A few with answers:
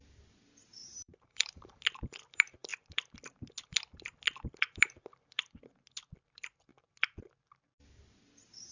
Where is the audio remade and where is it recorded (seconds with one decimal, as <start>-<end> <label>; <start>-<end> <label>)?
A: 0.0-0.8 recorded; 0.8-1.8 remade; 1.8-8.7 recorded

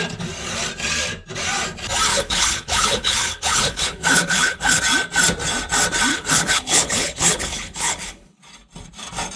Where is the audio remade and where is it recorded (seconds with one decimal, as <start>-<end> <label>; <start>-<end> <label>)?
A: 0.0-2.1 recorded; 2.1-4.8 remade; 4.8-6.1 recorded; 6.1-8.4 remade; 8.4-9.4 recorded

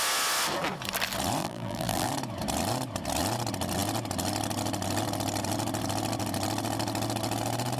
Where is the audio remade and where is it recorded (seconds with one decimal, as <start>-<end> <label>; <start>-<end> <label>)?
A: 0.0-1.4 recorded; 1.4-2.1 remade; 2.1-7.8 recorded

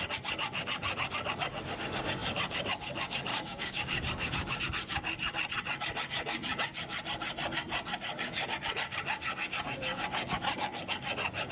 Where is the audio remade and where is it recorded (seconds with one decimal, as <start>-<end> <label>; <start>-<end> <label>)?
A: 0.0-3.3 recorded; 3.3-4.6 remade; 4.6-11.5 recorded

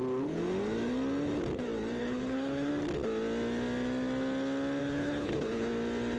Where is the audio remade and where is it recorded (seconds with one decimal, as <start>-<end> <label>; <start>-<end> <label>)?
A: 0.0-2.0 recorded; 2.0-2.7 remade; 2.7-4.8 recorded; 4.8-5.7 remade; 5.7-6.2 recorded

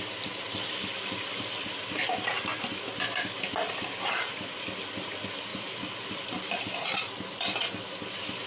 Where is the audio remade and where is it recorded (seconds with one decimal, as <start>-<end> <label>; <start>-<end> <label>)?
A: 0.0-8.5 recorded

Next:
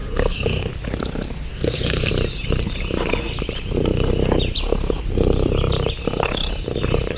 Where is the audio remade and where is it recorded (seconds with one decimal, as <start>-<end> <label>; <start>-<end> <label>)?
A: 0.0-0.7 remade; 0.7-1.5 recorded; 1.5-2.1 remade; 2.1-7.2 recorded